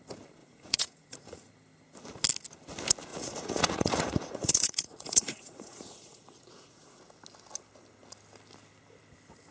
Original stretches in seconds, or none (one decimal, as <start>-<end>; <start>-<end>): 0.0-0.4; 1.5-3.1; 7.0-9.5